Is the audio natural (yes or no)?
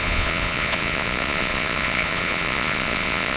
no